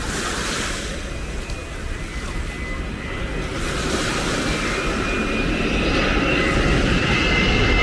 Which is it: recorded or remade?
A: recorded